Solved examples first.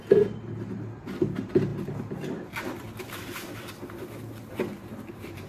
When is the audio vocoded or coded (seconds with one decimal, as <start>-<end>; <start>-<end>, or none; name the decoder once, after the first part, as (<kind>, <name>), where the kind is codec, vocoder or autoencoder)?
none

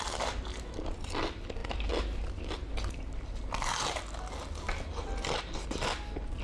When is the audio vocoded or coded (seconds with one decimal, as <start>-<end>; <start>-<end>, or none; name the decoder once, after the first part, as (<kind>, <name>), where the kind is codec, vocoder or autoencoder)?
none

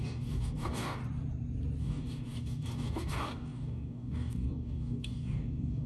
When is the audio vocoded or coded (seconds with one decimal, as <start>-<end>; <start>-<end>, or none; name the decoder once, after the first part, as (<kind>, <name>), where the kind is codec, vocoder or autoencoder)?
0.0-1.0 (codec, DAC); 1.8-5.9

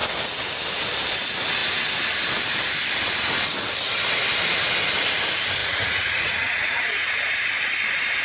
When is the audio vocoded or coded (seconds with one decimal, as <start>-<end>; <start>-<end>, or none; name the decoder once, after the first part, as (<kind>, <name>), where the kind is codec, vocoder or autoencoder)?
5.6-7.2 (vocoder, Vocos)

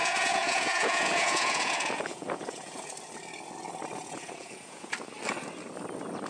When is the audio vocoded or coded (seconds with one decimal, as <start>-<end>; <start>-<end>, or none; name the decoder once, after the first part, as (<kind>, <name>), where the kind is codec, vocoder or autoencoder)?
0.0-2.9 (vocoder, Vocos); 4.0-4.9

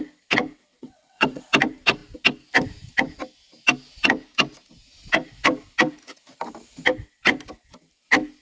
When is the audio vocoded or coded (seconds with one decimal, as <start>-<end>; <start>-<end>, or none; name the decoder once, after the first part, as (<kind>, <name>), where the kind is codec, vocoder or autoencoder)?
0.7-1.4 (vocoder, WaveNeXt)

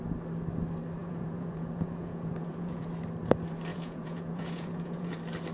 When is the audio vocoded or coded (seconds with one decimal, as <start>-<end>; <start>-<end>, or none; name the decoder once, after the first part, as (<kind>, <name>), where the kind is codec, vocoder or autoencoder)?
1.0-2.9 (vocoder, Vocos); 3.7-5.1

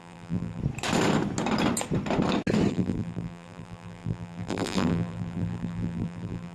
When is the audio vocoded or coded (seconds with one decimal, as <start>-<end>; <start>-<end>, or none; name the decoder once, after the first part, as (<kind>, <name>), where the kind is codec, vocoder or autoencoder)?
0.0-0.6 (vocoder, BigVGAN v2); 2.7-6.5